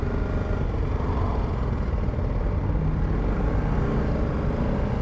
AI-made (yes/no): no